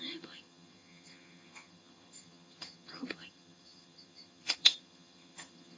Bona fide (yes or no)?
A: no